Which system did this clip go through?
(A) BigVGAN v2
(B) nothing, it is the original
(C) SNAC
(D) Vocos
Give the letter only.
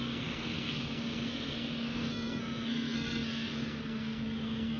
C